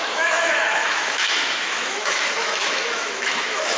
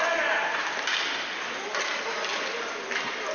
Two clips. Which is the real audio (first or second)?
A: second